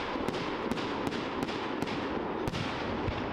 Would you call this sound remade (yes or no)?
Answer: no